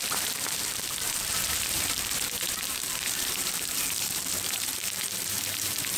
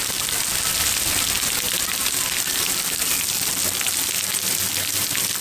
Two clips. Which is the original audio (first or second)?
second